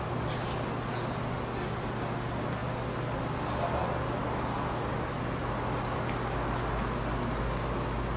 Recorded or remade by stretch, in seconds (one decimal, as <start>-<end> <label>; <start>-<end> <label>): 0.0-8.2 recorded